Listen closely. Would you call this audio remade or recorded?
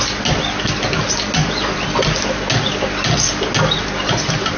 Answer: recorded